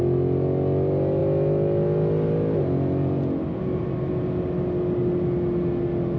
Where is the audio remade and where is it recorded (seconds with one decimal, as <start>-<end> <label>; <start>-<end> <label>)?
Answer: 0.0-6.2 recorded